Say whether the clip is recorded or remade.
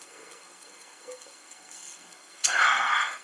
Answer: remade